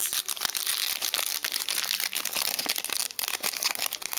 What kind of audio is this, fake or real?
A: real